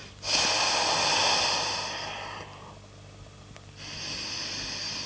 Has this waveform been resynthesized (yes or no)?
no